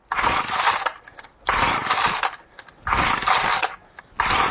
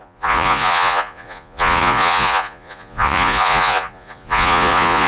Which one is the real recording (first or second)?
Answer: first